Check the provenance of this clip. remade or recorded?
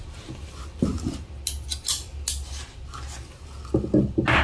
recorded